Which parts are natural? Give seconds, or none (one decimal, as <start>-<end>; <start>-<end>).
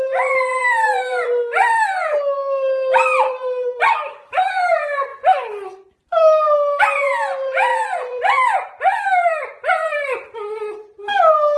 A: 1.3-3.2; 5.1-6.8; 11.1-11.6